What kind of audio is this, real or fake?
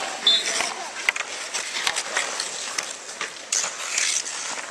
real